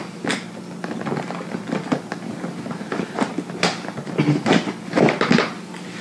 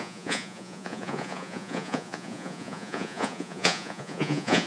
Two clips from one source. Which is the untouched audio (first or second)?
first